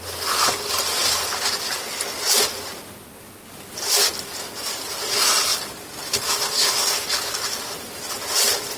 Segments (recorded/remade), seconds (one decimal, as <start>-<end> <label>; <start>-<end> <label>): 0.0-1.0 remade; 1.0-3.5 recorded; 3.5-8.8 remade